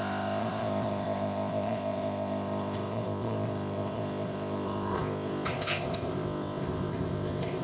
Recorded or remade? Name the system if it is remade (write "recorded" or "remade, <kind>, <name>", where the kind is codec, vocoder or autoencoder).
remade, codec, ZipCodec